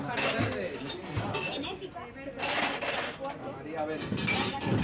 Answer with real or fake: real